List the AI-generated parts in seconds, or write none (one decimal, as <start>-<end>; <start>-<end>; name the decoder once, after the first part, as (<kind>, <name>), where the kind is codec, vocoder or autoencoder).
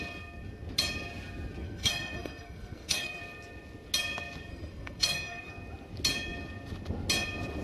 1.6-3.2 (codec, SNAC); 4.5-5.5